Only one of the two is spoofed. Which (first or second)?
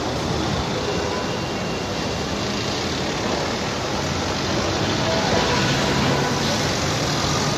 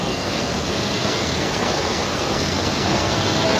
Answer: second